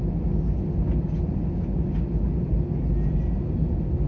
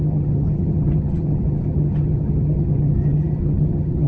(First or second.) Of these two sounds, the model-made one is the second